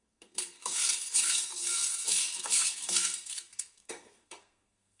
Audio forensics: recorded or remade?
remade